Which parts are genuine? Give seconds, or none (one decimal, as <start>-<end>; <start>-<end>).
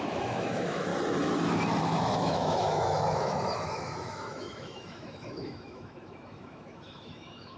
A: 0.9-1.8